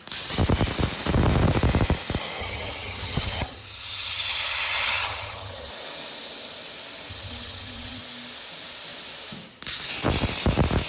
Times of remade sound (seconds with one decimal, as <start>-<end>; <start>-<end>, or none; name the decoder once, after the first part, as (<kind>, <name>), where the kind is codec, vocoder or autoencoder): 2.4-5.7 (vocoder, HiFi-GAN); 7.1-8.0